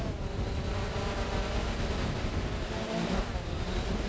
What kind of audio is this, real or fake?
real